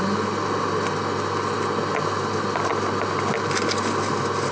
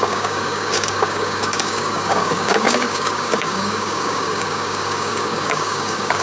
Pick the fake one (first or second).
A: second